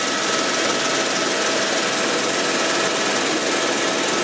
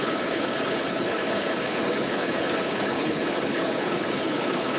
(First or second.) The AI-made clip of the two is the second